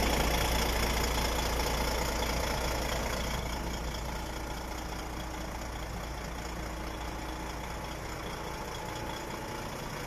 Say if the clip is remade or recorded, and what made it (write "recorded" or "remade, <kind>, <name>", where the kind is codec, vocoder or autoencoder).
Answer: recorded